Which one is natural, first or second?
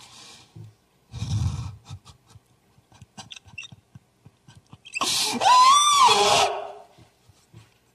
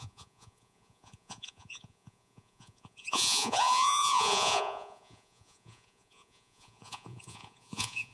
first